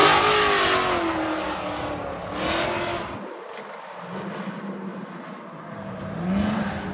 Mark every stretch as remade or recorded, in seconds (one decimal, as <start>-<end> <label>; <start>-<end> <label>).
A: 0.0-6.9 recorded